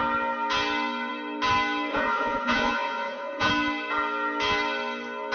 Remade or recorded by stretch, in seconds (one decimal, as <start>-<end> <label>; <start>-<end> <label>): 0.0-1.9 recorded; 1.9-3.5 remade; 3.5-5.3 recorded